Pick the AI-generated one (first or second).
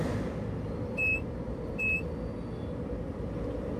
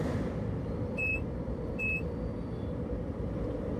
second